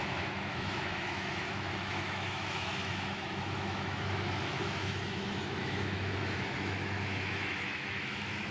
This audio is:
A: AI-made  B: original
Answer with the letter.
A